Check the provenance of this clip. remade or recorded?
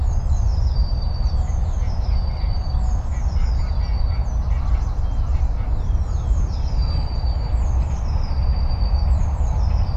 recorded